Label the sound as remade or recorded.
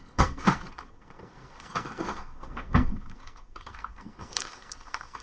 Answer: remade